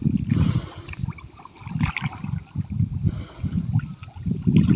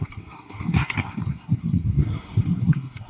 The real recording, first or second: first